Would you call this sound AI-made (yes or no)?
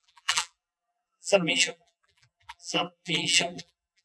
yes